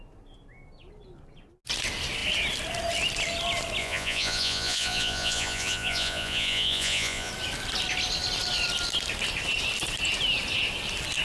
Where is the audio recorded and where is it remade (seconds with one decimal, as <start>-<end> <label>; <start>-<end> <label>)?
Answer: 0.0-3.8 recorded; 3.8-7.3 remade; 7.3-11.2 recorded